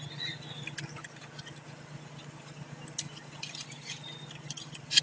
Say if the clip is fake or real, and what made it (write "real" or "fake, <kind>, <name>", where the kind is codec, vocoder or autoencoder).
real